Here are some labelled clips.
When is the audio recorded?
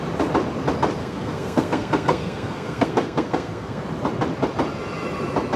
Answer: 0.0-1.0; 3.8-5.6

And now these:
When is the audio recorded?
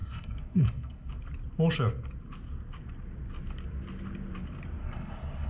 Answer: 1.1-4.8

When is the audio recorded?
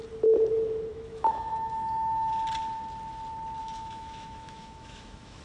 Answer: 0.0-0.9; 2.3-3.6